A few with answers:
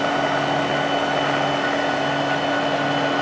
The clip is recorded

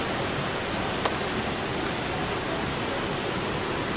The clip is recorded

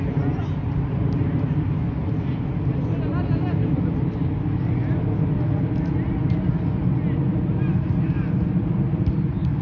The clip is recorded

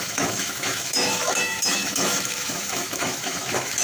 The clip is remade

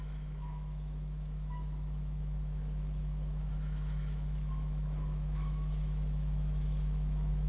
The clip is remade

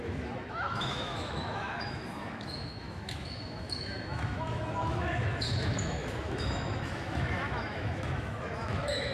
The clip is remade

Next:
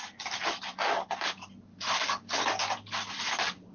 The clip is recorded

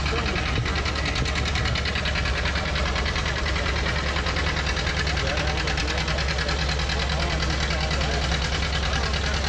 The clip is recorded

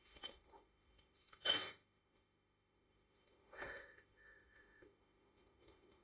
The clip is remade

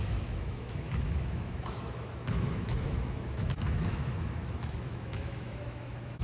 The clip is remade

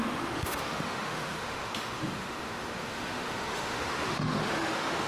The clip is remade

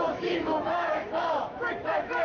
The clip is remade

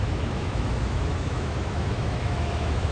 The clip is remade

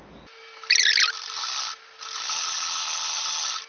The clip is recorded